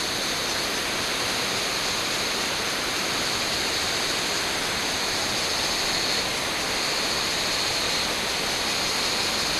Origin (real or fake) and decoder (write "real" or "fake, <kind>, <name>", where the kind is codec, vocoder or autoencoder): real